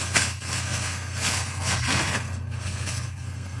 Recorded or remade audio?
remade